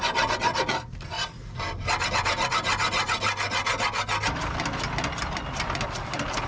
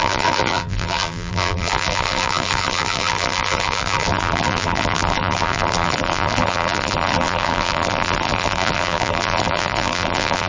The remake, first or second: second